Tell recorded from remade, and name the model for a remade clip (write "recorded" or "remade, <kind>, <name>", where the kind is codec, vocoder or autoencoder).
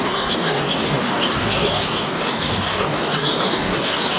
remade, codec, DAC